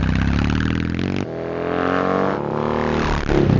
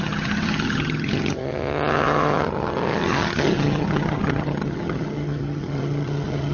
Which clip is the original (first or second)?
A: first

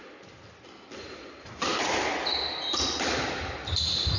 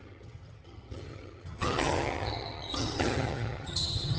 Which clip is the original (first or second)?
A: first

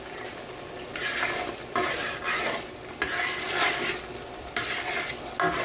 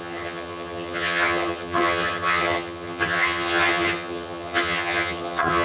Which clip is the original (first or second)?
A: first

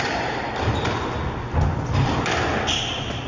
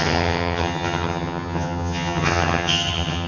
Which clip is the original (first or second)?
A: first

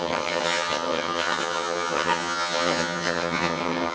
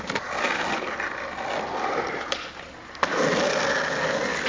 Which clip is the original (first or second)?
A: second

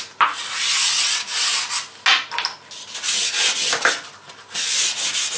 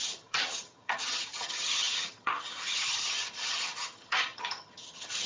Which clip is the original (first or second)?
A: first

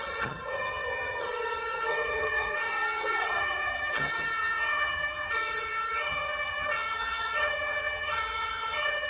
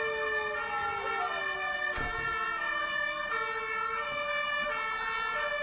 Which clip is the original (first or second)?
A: second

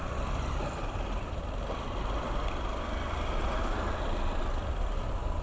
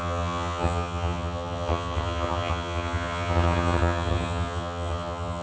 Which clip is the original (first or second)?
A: first